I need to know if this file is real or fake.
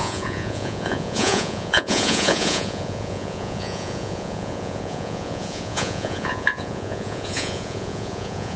fake